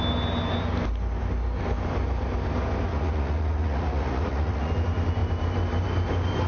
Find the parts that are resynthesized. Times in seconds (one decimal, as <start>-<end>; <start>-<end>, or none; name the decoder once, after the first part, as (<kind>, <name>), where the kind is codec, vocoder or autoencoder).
2.9-4.7 (vocoder, Vocos)